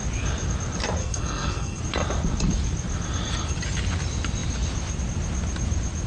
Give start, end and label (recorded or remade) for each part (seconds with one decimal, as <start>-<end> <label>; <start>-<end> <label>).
0.0-1.0 recorded; 1.0-1.8 remade; 1.8-6.1 recorded